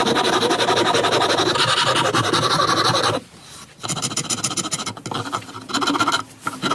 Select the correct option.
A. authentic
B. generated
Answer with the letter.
A